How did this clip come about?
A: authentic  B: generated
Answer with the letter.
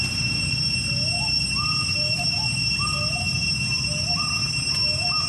A